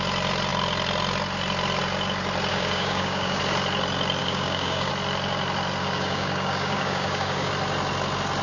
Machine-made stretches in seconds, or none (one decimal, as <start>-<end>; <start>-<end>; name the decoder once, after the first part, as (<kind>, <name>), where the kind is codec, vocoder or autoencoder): 2.5-3.4 (codec, DAC); 4.2-4.9; 5.8-7.5